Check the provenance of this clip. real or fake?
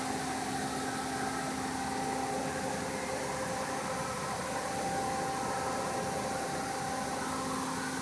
real